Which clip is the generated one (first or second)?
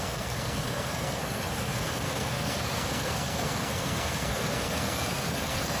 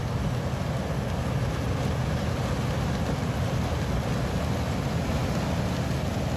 first